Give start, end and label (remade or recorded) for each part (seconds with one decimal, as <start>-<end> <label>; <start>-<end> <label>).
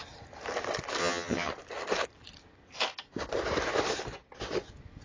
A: 0.0-1.0 recorded; 1.0-1.5 remade; 1.5-5.0 recorded